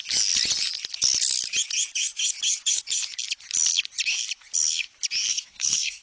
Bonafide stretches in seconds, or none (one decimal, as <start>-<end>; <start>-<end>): 0.0-5.3